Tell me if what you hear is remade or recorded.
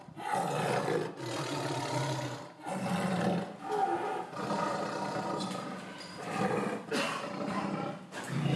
recorded